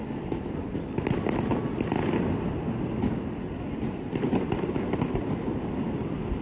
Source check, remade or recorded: recorded